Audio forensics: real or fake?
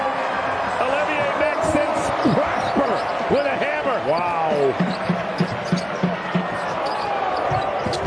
real